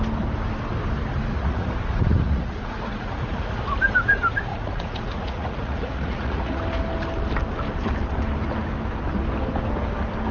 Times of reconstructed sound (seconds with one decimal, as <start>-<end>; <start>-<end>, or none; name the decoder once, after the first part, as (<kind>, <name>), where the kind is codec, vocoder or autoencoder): 1.3-3.6 (vocoder, Vocos); 4.5-6.6